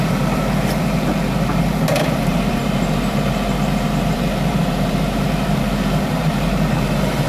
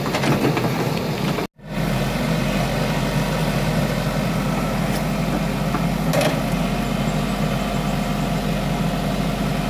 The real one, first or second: second